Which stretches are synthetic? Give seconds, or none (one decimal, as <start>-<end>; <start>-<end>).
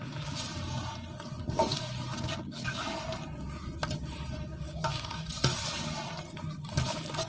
4.5-5.3